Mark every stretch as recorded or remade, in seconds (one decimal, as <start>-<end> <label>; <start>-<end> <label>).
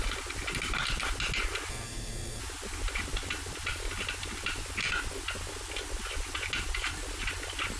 0.0-1.7 recorded; 1.7-2.4 remade; 2.4-7.8 recorded